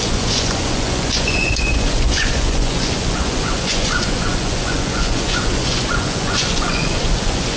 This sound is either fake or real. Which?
fake